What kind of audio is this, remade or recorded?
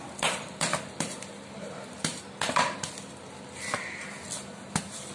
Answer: recorded